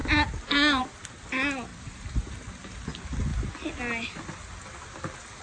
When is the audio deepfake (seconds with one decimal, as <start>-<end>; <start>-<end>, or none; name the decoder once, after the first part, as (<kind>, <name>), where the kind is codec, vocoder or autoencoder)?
1.7-2.3 (vocoder, BigVGAN v2)